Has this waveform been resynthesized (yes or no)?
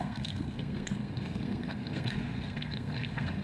yes